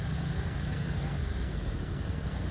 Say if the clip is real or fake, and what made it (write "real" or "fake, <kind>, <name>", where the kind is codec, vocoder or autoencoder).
fake, codec, SNAC